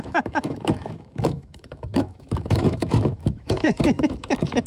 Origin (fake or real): fake